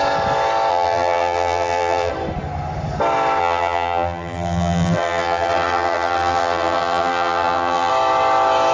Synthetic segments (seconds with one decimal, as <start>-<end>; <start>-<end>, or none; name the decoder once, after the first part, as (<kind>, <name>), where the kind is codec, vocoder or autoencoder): 0.7-2.1 (vocoder, BigVGAN v2); 3.4-7.9